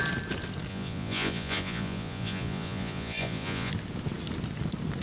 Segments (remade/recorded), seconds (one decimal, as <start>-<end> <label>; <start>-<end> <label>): 0.0-0.7 recorded; 0.7-3.7 remade; 3.7-5.0 recorded